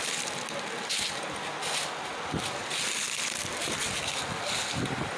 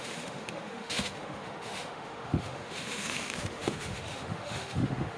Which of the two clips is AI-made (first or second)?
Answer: second